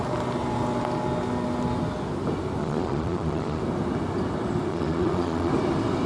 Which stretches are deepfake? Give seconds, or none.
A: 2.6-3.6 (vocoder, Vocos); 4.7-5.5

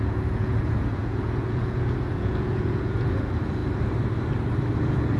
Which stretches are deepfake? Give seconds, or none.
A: 0.0-3.6 (vocoder, Vocos); 4.8-5.2

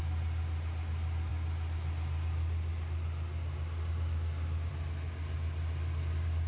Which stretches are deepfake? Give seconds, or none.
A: none